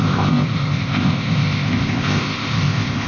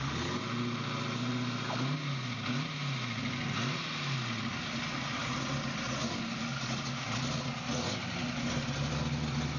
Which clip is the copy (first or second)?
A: first